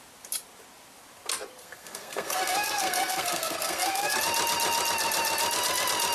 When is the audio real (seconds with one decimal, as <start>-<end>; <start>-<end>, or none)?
0.0-1.6; 4.2-6.1